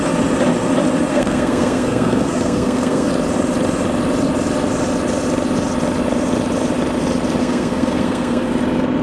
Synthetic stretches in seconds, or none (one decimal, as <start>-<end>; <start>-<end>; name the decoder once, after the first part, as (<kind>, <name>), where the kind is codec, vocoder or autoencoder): 1.1-3.1 (codec, SNAC); 7.4-8.5